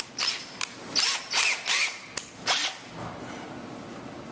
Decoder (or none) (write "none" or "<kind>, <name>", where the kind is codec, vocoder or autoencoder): none